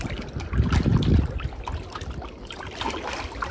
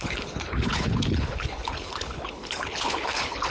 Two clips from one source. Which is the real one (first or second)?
first